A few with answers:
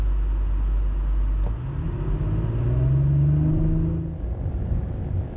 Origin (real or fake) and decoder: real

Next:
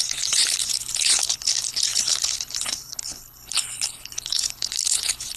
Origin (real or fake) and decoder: fake, codec, HILCodec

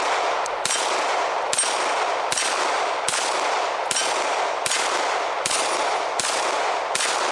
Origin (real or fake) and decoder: real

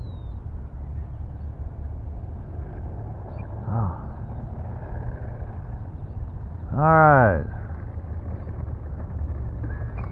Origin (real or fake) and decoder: real